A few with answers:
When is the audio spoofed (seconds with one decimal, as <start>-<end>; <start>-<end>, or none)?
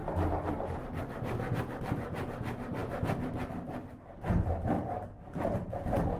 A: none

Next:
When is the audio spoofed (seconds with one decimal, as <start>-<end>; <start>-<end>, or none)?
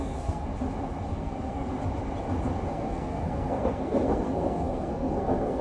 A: 0.0-0.5; 1.1-1.7; 2.7-5.6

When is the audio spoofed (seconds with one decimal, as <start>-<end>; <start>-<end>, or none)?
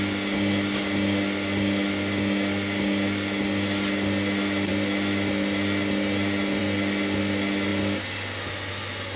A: none